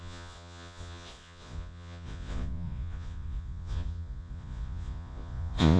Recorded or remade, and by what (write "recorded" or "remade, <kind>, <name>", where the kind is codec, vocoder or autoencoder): remade, vocoder, Vocos